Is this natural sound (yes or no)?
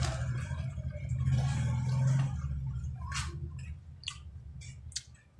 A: yes